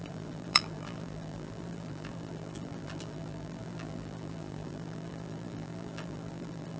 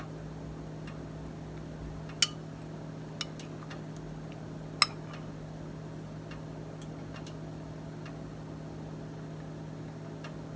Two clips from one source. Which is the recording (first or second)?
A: second